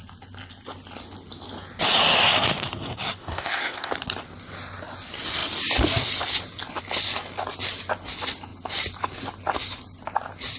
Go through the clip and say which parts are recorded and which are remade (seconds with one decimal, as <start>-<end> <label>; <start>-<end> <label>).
0.0-3.2 recorded; 3.2-3.9 remade; 3.9-10.6 recorded